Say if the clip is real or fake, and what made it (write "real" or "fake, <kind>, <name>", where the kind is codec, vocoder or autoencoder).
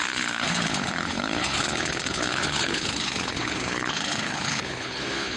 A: fake, codec, HILCodec